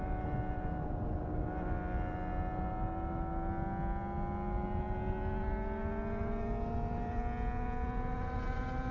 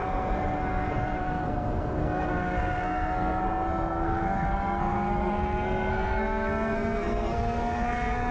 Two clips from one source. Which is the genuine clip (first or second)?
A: first